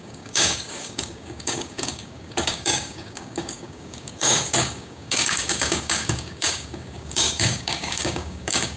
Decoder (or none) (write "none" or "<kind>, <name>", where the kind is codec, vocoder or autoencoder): codec, DAC